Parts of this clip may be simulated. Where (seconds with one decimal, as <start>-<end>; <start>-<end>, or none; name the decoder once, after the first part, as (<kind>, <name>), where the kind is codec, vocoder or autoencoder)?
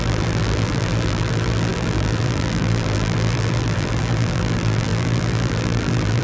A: 0.0-6.2 (vocoder, BigVGAN v2)